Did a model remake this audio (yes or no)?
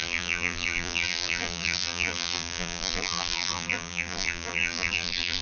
yes